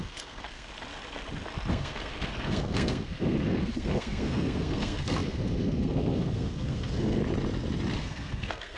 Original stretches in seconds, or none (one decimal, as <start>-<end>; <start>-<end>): 0.7-1.7; 7.2-8.0